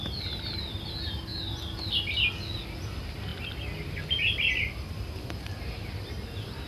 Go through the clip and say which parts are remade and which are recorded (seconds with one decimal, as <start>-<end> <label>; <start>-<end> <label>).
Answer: 0.0-6.7 recorded